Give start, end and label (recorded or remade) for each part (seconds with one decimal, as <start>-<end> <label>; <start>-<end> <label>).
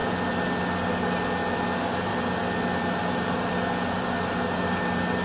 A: 0.0-3.0 recorded; 3.0-3.5 remade; 3.5-5.2 recorded